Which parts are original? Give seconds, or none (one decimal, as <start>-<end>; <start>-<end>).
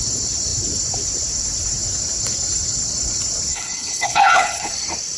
0.0-3.5; 4.7-5.2